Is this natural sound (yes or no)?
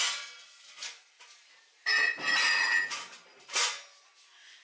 yes